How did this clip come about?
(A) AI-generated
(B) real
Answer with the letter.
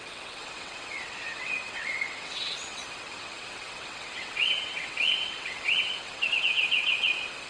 A